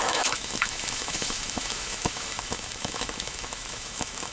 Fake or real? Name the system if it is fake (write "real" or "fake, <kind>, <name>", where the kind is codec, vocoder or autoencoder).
fake, autoencoder, DAC-VAE